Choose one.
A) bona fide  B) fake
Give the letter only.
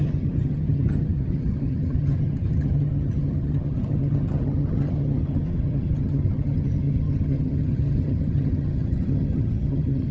B